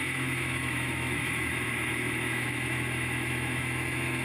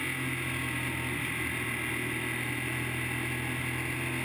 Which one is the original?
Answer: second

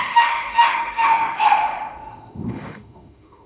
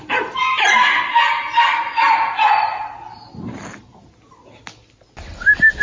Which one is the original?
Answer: second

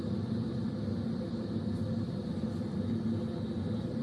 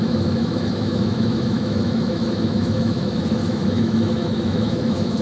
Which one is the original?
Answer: first